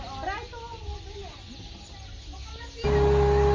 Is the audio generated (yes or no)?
no